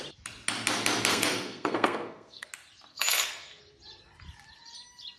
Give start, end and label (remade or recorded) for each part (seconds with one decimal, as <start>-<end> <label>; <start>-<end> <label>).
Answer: 0.0-1.1 recorded; 1.1-2.5 remade; 2.5-2.9 recorded; 2.9-3.6 remade; 3.6-5.2 recorded